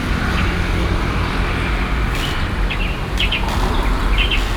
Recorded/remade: recorded